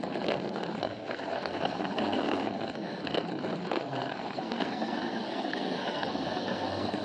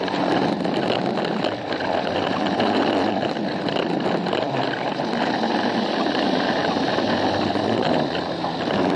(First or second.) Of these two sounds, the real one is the second